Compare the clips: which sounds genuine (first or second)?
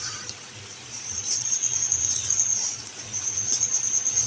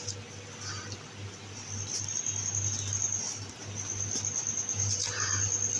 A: second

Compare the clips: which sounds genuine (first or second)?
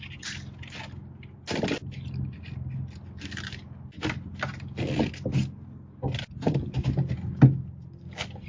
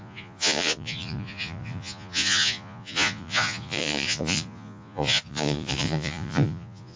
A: first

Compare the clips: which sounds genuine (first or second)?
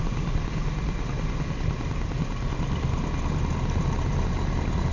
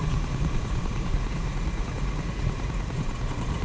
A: first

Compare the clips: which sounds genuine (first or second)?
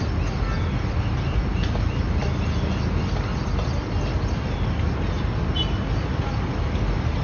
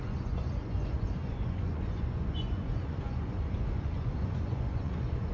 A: first